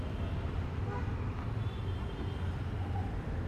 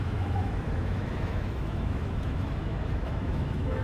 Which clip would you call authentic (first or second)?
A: first